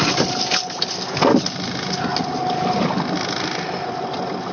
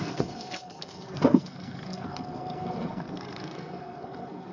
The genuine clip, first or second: first